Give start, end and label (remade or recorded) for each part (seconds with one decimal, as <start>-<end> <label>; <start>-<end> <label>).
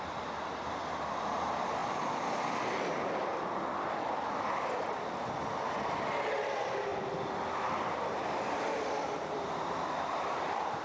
0.0-3.3 remade; 3.3-6.1 recorded; 6.1-6.9 remade; 6.9-8.4 recorded; 8.4-10.8 remade